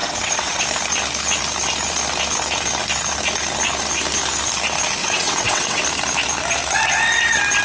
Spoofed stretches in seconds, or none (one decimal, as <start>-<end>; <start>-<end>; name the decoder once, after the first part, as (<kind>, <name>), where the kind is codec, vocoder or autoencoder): 0.0-0.6 (vocoder, WaveNeXt); 5.0-5.8